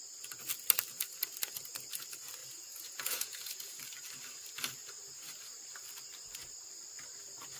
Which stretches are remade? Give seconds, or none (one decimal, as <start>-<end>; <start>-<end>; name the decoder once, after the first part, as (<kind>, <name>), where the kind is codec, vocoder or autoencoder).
2.4-3.8 (vocoder, Vocos)

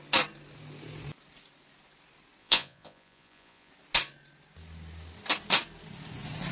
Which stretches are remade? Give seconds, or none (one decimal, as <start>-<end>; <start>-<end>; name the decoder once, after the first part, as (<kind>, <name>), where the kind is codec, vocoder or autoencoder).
2.4-3.7 (vocoder, Vocos)

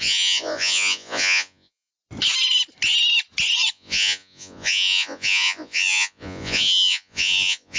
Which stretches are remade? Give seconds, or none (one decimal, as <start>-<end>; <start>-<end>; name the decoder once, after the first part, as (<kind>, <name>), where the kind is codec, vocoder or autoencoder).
0.0-1.9 (vocoder, Vocos); 3.7-7.8

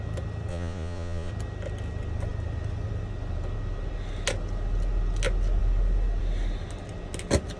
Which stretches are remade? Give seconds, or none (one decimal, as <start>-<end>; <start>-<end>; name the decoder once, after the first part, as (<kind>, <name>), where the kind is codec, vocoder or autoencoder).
0.5-1.3 (vocoder, Vocos)

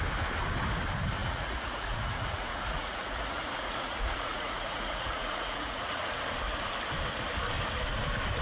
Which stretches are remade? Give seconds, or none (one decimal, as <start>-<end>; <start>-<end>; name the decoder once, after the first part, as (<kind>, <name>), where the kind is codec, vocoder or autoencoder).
1.2-6.2 (vocoder, Vocos)

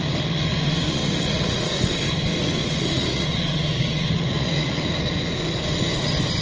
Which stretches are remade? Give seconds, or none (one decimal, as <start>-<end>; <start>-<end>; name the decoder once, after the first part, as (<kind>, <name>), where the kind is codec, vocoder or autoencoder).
0.5-1.7 (vocoder, Vocos); 2.6-5.1

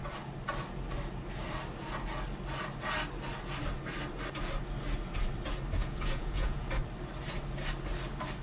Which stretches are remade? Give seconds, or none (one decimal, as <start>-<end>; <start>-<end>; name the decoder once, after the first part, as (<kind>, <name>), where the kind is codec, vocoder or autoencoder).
5.8-6.8 (vocoder, Vocos)